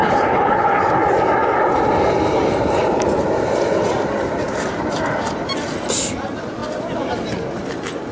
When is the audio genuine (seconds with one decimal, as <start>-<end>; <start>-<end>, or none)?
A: 0.8-8.1